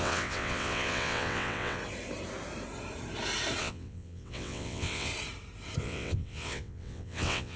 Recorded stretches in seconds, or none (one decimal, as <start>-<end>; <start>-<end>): 1.8-3.6; 5.1-5.8